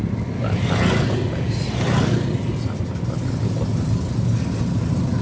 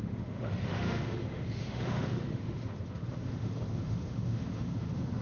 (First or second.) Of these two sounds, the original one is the first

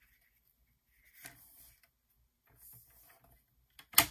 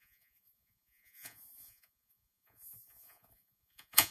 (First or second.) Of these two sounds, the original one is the first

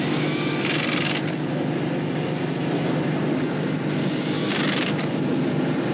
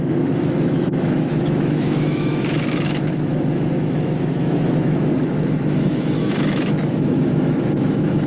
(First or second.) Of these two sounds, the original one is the first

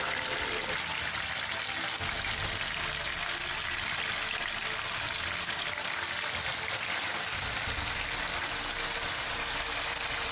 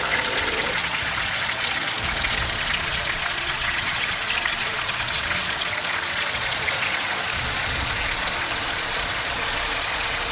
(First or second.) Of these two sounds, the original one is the first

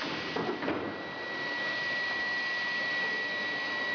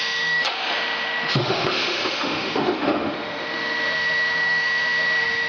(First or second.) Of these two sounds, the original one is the first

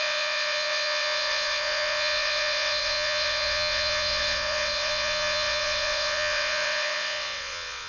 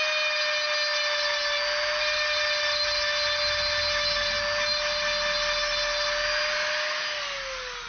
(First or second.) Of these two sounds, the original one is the second